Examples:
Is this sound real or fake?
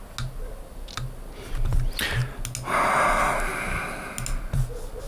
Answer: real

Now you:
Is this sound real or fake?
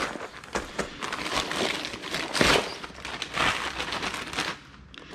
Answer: real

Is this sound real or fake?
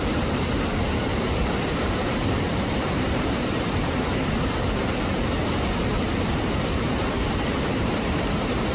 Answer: fake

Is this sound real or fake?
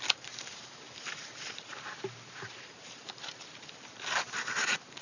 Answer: fake